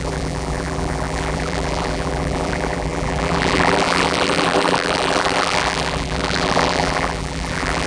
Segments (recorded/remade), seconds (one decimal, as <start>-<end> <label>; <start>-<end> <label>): 0.0-7.9 remade